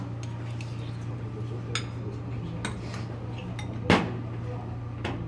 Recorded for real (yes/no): yes